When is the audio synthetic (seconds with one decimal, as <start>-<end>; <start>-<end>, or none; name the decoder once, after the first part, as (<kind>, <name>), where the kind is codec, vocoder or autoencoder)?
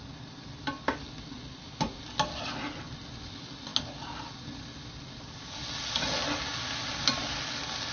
none